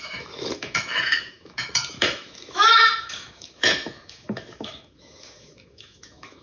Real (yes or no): no